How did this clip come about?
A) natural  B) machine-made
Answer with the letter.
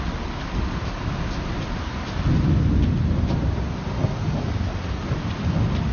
A